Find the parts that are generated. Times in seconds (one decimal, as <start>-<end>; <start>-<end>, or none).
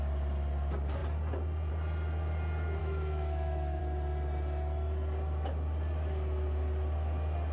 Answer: 2.8-3.8